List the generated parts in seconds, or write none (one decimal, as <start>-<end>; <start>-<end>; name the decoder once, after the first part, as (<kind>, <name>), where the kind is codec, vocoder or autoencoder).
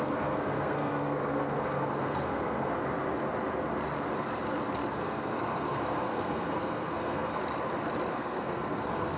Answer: 0.0-2.7 (codec, SNAC); 4.9-7.4; 8.1-9.2